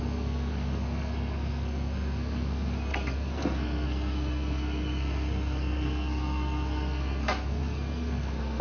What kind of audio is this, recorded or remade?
remade